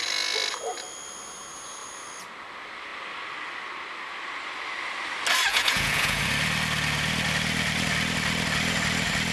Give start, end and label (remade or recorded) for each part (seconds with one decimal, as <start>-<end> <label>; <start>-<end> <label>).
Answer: 0.0-5.5 recorded; 5.5-6.2 remade; 6.2-9.3 recorded